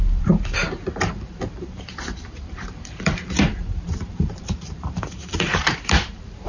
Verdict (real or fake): fake